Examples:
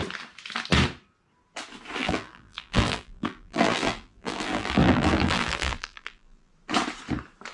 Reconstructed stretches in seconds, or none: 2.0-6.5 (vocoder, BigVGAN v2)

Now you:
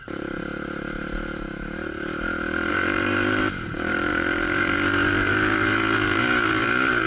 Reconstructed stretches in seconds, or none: 0.0-0.5 (vocoder, BigVGAN v2); 2.7-7.1